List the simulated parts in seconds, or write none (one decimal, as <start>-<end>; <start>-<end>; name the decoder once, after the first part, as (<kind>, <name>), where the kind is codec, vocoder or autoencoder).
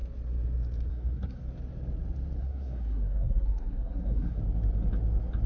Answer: 0.9-1.4 (codec, SNAC); 2.4-4.4